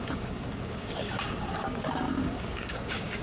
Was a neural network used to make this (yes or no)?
yes